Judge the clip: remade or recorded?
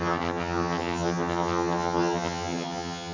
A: remade